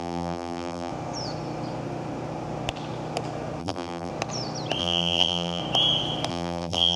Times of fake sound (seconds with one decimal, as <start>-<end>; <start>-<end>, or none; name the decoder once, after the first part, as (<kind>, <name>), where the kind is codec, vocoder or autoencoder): 0.0-0.9 (vocoder, BigVGAN v2); 3.6-4.1; 4.8-5.6; 6.3-7.0